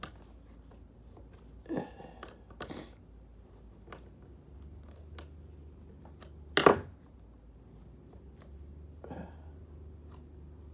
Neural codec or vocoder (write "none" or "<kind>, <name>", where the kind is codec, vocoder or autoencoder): none